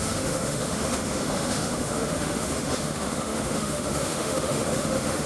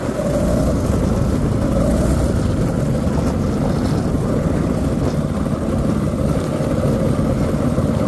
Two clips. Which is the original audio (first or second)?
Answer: second